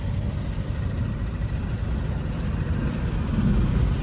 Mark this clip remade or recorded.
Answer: recorded